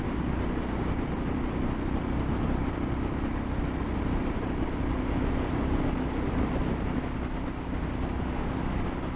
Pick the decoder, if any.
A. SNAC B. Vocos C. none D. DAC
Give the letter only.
C